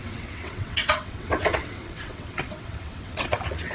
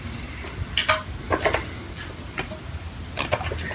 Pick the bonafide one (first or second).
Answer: second